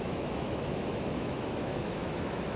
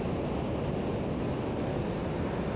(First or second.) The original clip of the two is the second